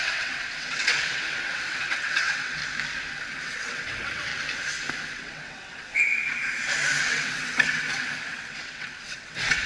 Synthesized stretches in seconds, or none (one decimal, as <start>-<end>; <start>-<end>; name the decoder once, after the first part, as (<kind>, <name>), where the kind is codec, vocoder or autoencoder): 0.0-2.6 (vocoder, WaveNeXt); 3.4-4.3; 5.1-6.1; 7.0-9.7